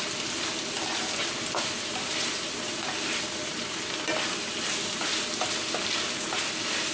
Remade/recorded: recorded